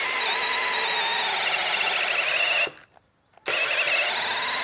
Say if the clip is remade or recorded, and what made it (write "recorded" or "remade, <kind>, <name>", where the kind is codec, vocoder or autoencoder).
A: recorded